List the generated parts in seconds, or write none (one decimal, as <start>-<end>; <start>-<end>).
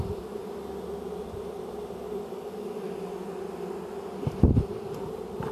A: none